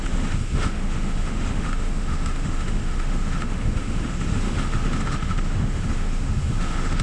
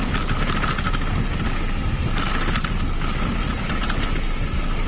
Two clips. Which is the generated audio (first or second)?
first